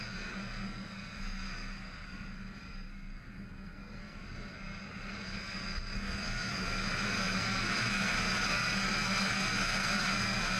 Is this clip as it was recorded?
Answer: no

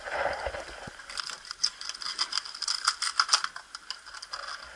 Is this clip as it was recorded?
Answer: yes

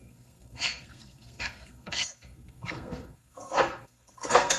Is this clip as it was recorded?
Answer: no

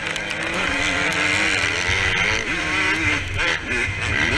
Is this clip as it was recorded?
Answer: yes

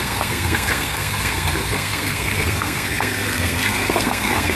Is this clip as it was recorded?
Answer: no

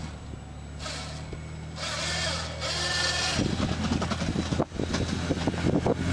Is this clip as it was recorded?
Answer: yes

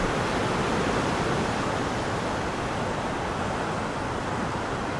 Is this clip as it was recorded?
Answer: yes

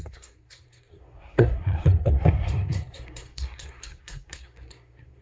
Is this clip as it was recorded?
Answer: no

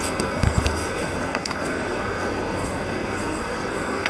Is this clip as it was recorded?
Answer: no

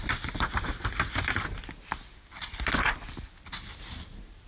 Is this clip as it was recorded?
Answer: yes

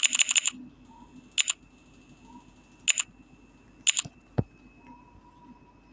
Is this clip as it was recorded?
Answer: yes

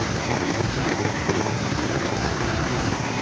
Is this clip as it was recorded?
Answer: no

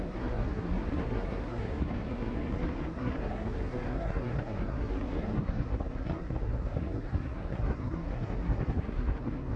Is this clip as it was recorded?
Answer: no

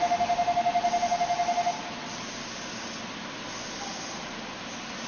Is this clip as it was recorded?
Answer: yes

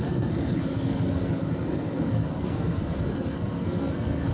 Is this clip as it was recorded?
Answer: no